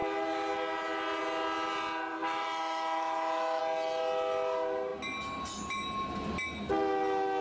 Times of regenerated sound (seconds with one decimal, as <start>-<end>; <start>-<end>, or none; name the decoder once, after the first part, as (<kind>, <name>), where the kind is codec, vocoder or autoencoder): 2.1-3.6 (autoencoder, DAC-VAE)